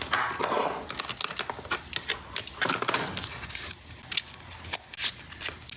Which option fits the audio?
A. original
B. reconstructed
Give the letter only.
A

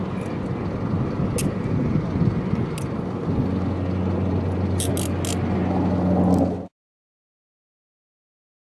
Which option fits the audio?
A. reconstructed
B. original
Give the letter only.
B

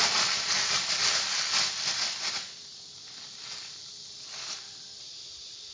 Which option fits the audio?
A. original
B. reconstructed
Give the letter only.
A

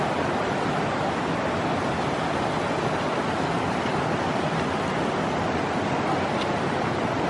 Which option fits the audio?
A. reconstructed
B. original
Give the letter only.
B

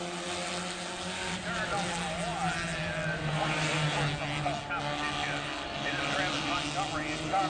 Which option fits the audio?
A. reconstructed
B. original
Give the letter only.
B